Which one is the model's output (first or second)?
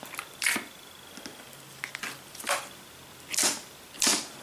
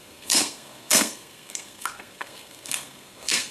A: second